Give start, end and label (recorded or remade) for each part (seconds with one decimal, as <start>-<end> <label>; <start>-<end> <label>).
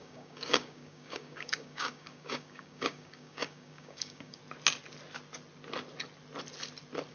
0.0-4.4 remade; 4.4-7.1 recorded